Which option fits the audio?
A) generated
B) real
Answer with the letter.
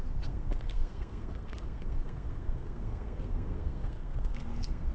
A